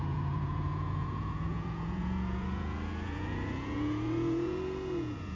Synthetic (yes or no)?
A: yes